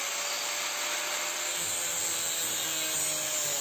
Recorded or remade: recorded